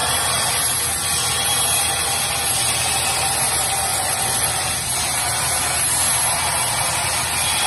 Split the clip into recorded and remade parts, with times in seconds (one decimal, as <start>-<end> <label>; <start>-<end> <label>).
0.0-3.9 recorded; 3.9-4.5 remade; 4.5-7.7 recorded